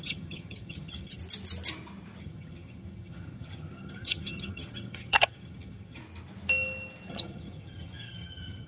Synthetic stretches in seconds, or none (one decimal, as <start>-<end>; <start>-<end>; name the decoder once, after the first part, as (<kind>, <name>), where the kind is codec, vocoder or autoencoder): 0.0-1.2 (vocoder, HiFi-GAN); 2.2-6.0; 7.1-8.7